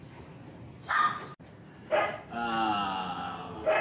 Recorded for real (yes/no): yes